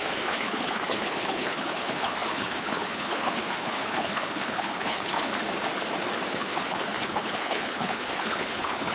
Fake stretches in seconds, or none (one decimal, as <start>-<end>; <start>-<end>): 0.0-5.3; 6.3-8.9

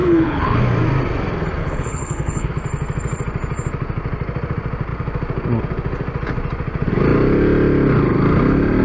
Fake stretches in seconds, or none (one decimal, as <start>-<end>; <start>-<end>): 0.0-0.6; 1.6-2.5

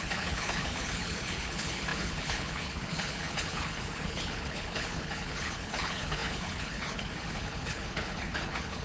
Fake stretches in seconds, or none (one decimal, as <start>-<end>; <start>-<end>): 0.0-8.8